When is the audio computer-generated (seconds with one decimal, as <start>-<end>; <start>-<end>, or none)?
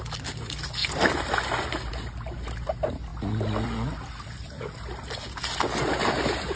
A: none